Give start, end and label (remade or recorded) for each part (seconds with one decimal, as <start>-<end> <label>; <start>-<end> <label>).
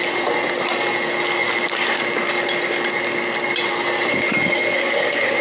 0.0-4.3 recorded; 4.3-5.4 remade